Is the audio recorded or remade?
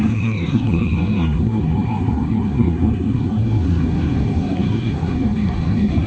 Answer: remade